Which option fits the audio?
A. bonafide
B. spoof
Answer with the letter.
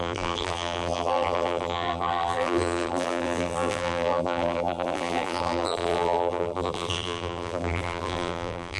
B